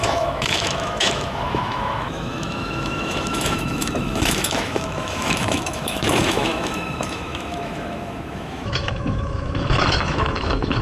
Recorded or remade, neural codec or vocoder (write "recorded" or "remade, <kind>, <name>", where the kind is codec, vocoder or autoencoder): remade, autoencoder, DAC-VAE